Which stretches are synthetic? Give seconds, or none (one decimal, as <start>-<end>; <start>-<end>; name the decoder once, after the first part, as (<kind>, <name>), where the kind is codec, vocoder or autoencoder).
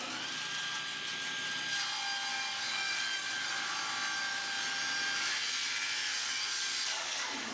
2.3-3.5 (codec, DAC); 6.0-7.5